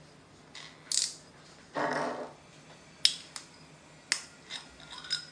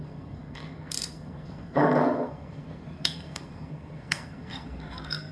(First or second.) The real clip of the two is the first